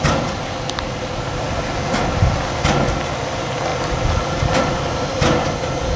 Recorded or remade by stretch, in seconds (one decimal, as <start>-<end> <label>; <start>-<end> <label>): 0.0-6.0 recorded